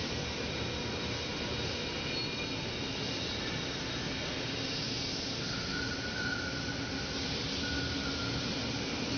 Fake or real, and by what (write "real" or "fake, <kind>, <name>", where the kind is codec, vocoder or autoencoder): real